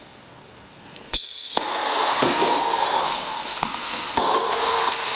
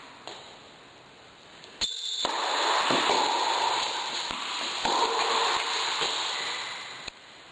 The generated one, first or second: first